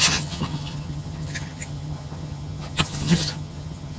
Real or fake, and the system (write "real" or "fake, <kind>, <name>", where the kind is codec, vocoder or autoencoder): fake, vocoder, HiFi-GAN